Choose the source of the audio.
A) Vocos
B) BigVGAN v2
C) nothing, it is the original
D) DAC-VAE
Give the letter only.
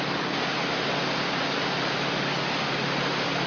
C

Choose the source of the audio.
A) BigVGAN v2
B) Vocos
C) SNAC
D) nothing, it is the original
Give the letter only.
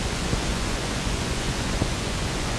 B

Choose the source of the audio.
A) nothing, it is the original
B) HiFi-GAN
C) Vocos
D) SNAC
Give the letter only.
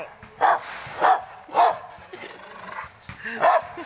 A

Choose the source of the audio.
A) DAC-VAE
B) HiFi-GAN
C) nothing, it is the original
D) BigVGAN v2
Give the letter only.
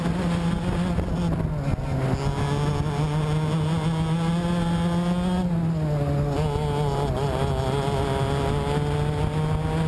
C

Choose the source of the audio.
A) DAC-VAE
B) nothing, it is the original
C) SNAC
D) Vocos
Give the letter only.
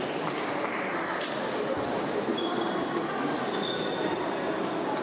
B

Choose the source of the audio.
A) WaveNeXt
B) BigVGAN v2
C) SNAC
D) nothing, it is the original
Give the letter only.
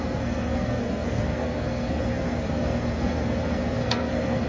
C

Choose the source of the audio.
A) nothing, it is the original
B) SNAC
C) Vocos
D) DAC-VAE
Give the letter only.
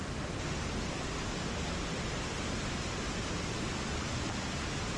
A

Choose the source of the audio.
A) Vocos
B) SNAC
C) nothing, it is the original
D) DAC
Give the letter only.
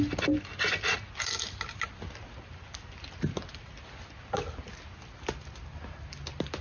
C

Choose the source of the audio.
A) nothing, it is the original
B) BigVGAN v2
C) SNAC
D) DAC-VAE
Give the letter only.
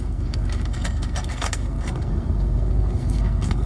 C